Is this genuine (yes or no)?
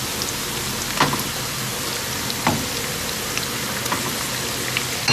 yes